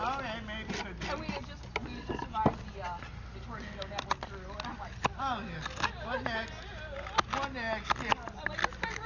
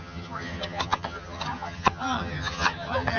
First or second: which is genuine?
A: first